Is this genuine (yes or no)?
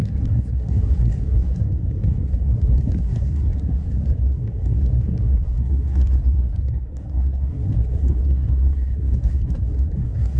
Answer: no